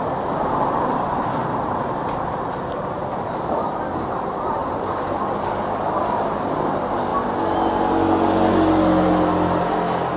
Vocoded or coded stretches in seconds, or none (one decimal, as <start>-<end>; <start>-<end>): 1.4-3.7; 4.6-5.6